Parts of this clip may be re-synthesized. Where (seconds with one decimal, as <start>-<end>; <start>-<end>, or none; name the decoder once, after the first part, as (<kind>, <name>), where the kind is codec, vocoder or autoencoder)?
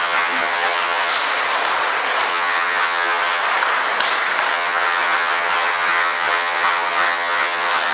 0.0-1.1 (vocoder, HiFi-GAN); 2.3-3.4; 4.5-7.9